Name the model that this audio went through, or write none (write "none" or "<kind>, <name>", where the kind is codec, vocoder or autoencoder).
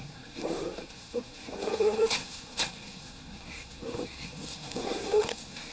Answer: codec, SNAC